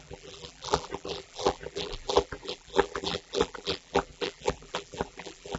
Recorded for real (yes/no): no